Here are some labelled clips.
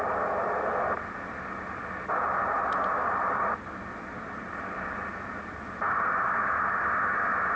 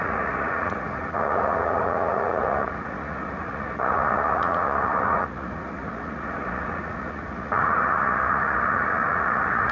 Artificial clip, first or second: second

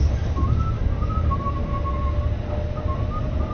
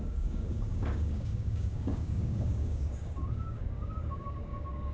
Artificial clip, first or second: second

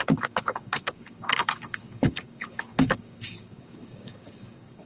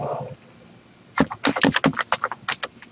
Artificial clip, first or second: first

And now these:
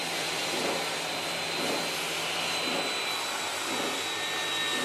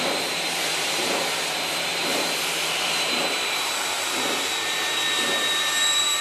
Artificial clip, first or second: second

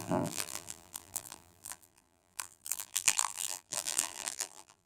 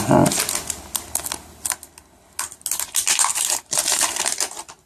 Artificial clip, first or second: first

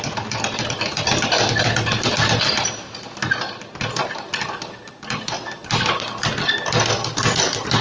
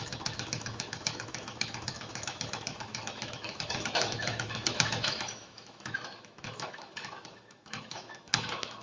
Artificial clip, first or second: second